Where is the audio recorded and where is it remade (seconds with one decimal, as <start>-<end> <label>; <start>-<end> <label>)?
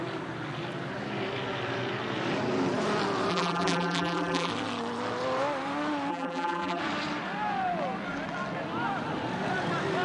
0.0-3.3 recorded; 3.3-4.5 remade; 4.5-6.1 recorded; 6.1-6.8 remade; 6.8-10.0 recorded